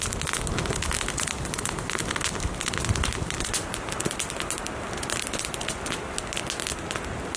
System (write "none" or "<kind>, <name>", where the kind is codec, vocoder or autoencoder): none